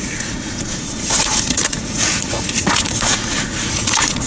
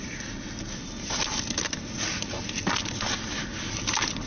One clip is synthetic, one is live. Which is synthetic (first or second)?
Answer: first